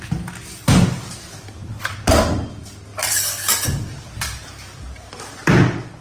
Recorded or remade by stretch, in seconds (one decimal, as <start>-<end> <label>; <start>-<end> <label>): 0.0-1.3 recorded; 1.3-1.9 remade; 1.9-6.0 recorded